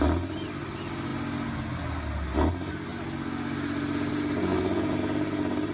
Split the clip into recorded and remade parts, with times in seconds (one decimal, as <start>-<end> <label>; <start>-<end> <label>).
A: 0.0-5.7 recorded

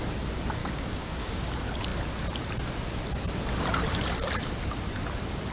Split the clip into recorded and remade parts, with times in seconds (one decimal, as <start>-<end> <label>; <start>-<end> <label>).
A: 0.0-0.6 recorded; 0.6-1.5 remade; 1.5-5.5 recorded

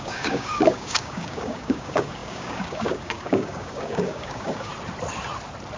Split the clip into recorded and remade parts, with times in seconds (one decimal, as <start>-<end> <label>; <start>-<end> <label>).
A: 0.0-4.7 remade; 4.7-5.8 recorded

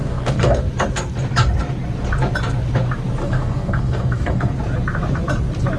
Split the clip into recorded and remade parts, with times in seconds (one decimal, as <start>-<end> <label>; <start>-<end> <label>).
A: 0.0-0.6 remade; 0.6-3.2 recorded; 3.2-4.5 remade; 4.5-5.8 recorded

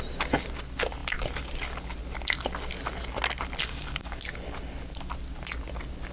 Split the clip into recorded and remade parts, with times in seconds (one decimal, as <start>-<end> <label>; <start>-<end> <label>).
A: 0.0-3.6 recorded; 3.6-4.2 remade; 4.2-6.1 recorded

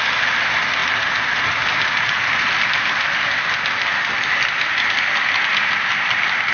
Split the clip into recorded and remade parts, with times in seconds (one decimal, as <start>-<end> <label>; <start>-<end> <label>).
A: 0.0-6.5 recorded